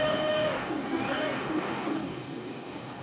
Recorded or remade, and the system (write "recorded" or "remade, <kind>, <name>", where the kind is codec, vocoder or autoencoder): remade, codec, DAC